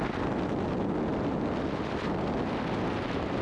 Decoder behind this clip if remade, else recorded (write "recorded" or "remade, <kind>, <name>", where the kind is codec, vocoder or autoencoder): recorded